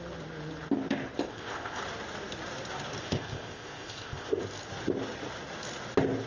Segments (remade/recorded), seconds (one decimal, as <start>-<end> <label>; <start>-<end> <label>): 0.0-1.3 recorded; 1.3-1.8 remade; 1.8-3.0 recorded; 3.0-4.4 remade; 4.4-6.3 recorded